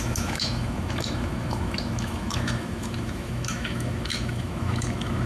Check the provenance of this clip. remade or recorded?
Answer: remade